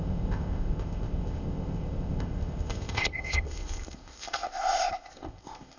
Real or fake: fake